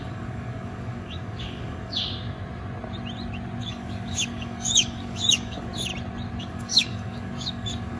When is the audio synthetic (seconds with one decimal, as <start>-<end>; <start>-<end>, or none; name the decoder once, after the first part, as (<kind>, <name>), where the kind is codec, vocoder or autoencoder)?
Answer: 0.0-2.0 (codec, DAC); 3.6-5.9; 6.4-8.0